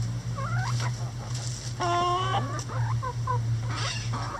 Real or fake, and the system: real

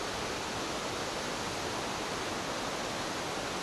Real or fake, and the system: real